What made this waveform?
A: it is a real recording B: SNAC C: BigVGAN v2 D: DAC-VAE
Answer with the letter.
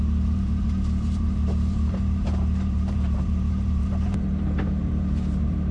C